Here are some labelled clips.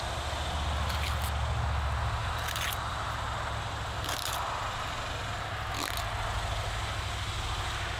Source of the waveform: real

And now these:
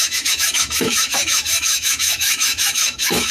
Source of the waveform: fake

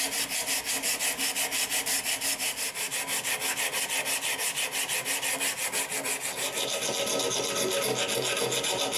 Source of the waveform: real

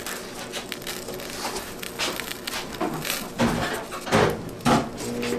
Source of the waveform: real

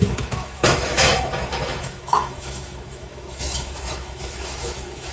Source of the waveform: fake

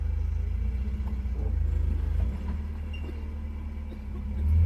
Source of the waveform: real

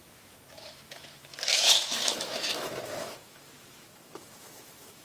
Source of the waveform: fake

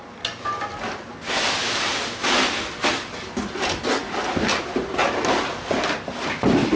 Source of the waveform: real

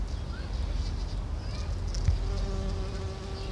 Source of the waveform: real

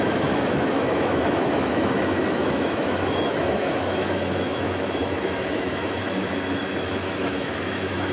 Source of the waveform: fake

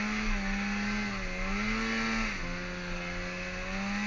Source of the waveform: real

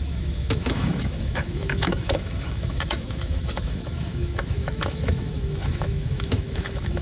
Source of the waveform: fake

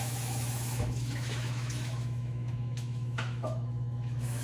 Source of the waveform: fake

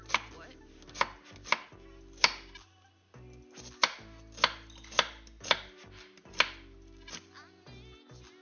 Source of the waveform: real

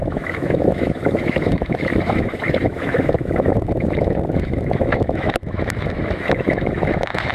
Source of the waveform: fake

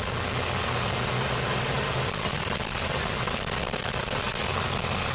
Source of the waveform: real